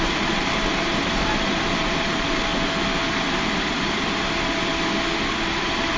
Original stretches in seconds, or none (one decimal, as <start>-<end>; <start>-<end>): 2.5-3.3; 4.7-5.6